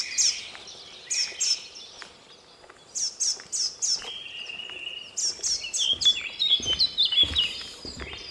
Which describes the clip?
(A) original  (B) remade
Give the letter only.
A